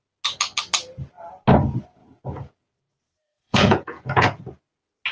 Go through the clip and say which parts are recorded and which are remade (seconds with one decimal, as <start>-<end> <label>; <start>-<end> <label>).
0.0-2.0 recorded; 2.0-4.4 remade; 4.4-5.1 recorded